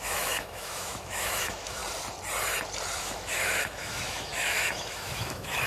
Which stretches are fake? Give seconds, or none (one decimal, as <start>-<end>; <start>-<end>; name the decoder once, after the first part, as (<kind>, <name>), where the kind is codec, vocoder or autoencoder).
0.0-1.8 (autoencoder, DAC-VAE); 3.0-5.7